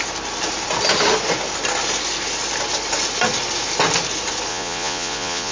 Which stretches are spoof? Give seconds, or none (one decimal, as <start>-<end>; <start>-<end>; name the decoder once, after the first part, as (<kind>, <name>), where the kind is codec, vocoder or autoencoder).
4.5-5.5 (vocoder, Vocos)